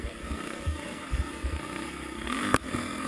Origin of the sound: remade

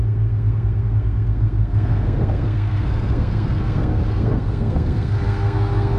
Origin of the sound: remade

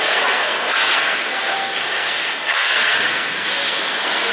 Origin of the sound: remade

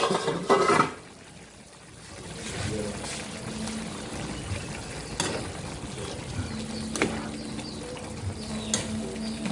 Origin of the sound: recorded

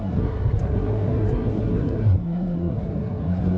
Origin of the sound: remade